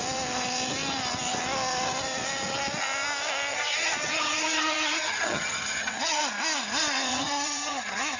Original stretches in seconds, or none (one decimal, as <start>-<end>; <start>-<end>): 0.0-3.5; 6.2-7.1